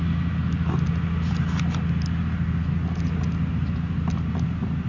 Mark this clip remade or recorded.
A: recorded